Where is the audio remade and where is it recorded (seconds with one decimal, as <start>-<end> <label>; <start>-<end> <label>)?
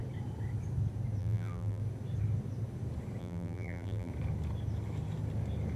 0.0-1.2 recorded; 1.2-1.8 remade; 1.8-3.2 recorded; 3.2-4.1 remade; 4.1-5.8 recorded